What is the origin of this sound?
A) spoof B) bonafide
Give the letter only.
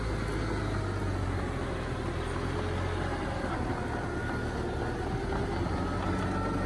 B